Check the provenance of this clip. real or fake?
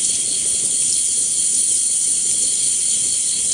real